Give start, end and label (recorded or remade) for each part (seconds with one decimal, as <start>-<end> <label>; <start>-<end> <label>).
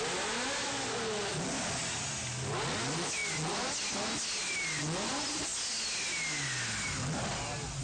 0.0-7.8 recorded